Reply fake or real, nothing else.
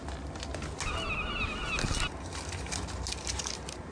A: real